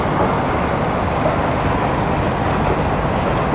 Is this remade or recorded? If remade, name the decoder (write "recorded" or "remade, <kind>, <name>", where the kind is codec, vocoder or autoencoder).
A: recorded